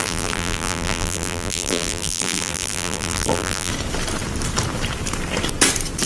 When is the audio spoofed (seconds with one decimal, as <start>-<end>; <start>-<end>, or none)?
0.0-3.7